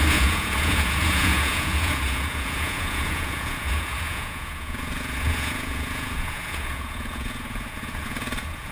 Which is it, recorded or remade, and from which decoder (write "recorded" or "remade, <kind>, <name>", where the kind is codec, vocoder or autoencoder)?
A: remade, vocoder, Vocos